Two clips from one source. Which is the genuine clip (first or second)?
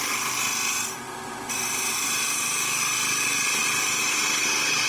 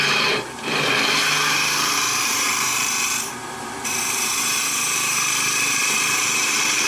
first